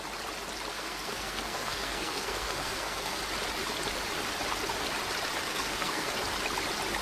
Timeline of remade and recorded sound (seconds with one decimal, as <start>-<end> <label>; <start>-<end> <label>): 0.0-0.7 recorded; 0.7-3.2 remade; 3.2-5.5 recorded; 5.5-6.1 remade; 6.1-7.0 recorded